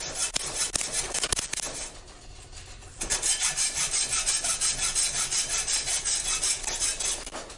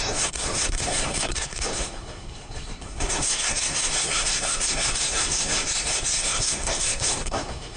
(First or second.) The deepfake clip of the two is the second